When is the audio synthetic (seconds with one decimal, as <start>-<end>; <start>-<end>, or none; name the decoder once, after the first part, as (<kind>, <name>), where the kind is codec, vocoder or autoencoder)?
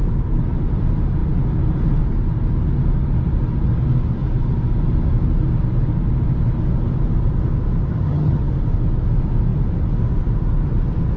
7.9-8.4 (vocoder, HiFi-GAN)